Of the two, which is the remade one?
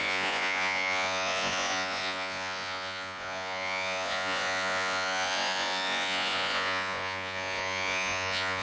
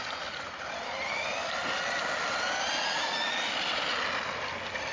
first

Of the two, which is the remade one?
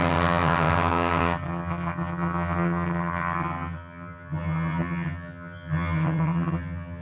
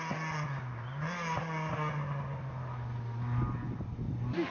first